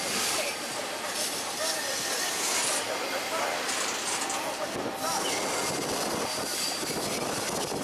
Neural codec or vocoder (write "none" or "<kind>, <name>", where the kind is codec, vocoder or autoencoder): none